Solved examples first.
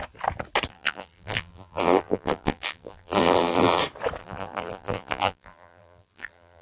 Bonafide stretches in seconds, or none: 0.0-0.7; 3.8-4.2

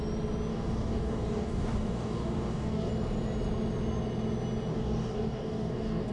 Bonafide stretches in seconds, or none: 0.0-0.5; 2.9-4.7